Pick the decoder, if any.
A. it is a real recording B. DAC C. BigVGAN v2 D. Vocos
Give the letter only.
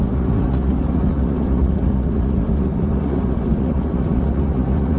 D